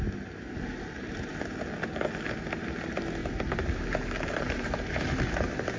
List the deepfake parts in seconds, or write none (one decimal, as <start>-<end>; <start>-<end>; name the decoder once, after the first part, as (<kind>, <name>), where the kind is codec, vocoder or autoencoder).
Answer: 0.7-1.3 (vocoder, BigVGAN v2); 3.2-5.2